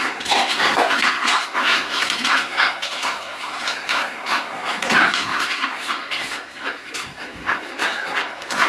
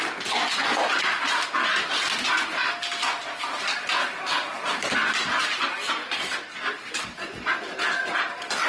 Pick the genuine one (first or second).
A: second